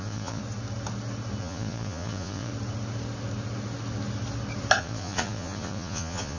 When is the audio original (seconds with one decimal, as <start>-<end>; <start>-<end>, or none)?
0.4-1.4; 2.5-4.8